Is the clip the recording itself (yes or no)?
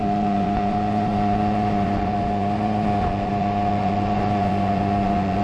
no